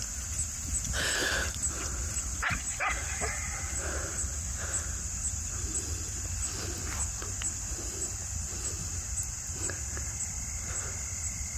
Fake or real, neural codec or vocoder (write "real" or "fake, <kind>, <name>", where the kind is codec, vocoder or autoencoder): real